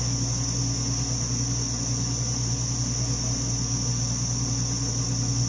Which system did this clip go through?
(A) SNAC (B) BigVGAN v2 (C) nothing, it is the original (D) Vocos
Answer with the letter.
C